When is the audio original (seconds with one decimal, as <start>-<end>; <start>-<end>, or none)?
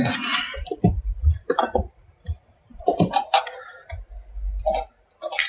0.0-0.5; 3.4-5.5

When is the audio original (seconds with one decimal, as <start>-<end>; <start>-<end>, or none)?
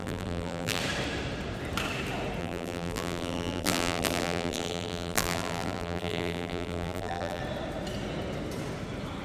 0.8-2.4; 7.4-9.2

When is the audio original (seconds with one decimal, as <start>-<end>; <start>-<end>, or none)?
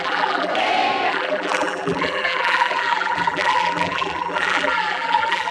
0.5-1.1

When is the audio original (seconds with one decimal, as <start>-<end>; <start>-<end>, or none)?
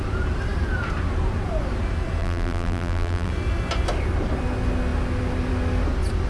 0.0-2.2; 3.3-6.3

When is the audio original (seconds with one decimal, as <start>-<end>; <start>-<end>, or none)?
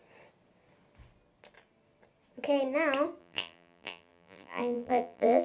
0.0-3.2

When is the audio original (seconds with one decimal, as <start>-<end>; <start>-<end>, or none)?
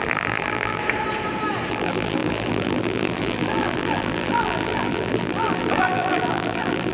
0.8-1.7